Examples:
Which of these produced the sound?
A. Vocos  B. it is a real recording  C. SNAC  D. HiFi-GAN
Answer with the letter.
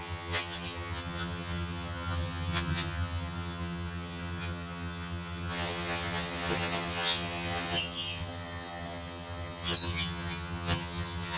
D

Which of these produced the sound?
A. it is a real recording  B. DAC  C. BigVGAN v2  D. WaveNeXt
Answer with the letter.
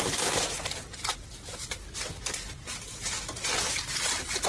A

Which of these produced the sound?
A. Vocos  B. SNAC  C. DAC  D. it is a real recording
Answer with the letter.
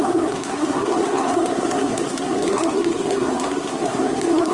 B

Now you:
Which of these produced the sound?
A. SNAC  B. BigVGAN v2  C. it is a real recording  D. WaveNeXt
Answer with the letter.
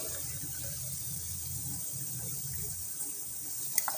B